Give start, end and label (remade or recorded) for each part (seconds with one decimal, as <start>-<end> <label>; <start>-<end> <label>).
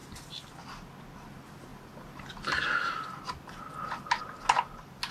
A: 0.0-5.1 recorded